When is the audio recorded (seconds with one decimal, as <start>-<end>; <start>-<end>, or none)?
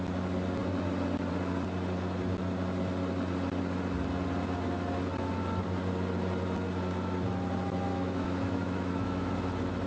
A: 0.0-7.9; 9.3-9.9